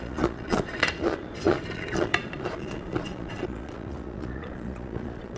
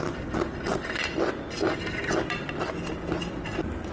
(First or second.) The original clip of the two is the second